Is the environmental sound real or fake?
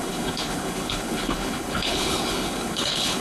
fake